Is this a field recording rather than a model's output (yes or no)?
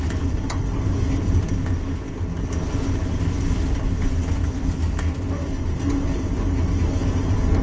yes